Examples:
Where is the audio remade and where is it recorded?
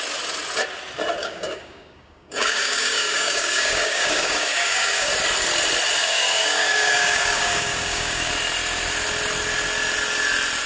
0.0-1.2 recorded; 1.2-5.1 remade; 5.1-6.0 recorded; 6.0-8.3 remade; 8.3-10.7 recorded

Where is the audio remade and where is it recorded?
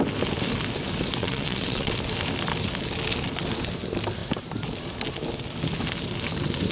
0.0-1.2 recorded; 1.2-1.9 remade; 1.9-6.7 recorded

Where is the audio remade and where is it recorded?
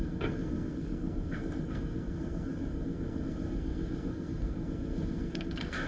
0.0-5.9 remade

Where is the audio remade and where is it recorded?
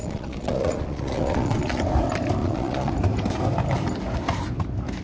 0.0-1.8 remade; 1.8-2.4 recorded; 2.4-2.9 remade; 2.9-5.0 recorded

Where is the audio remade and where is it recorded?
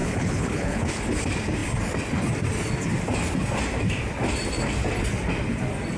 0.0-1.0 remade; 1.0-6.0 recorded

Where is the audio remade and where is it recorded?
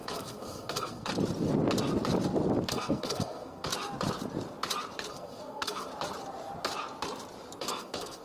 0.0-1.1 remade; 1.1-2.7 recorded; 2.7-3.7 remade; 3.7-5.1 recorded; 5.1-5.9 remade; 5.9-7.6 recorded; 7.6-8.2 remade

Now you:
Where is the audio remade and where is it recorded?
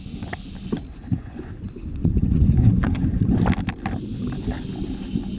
0.0-0.9 recorded; 0.9-1.5 remade; 1.5-2.0 recorded; 2.0-3.4 remade; 3.4-5.4 recorded